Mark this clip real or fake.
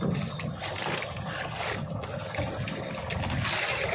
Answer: real